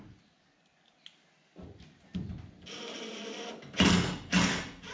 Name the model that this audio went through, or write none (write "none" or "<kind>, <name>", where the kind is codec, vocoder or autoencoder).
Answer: none